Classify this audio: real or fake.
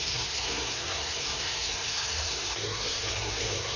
fake